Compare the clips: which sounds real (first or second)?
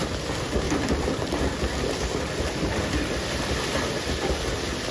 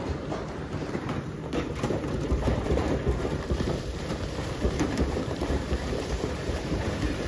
first